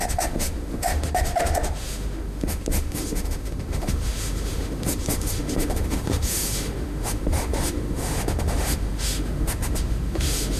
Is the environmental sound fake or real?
fake